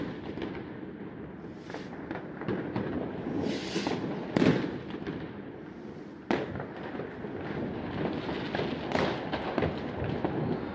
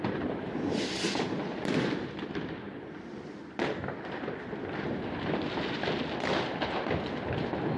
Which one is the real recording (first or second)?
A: first